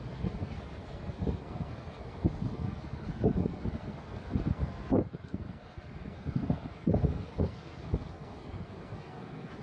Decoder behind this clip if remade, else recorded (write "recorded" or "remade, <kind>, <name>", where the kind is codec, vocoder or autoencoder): remade, codec, SNAC